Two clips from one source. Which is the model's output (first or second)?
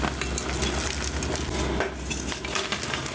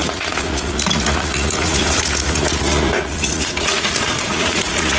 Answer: second